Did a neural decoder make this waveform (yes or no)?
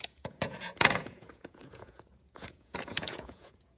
yes